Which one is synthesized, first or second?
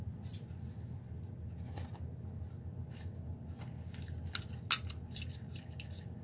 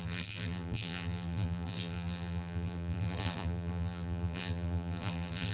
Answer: second